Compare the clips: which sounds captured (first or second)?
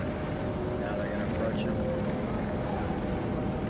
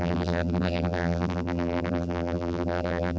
first